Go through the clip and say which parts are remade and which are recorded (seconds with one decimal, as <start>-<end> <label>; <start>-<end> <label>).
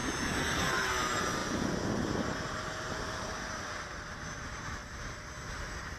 0.0-0.6 recorded; 0.6-1.4 remade; 1.4-3.1 recorded; 3.1-6.0 remade